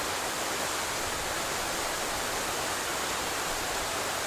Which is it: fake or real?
real